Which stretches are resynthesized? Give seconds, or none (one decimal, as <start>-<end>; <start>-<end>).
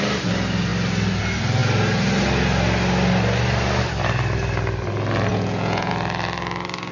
5.3-5.9